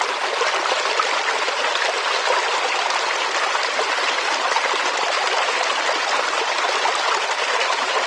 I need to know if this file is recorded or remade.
recorded